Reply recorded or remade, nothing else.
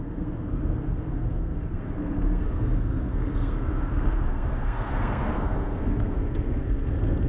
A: remade